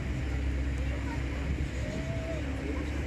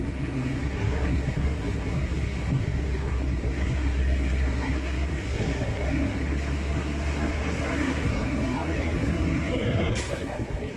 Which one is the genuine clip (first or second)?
first